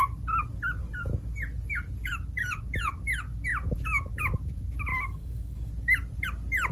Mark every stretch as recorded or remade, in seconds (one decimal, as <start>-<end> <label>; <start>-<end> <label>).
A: 0.0-4.9 recorded; 4.9-5.7 remade; 5.7-6.7 recorded